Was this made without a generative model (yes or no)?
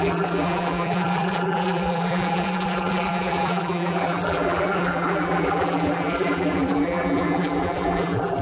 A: no